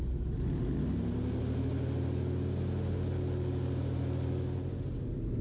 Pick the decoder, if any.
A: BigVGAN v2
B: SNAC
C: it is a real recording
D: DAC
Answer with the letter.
C